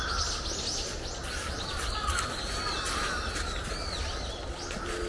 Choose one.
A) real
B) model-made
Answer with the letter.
A